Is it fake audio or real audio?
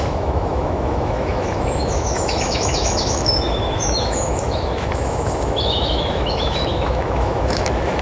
fake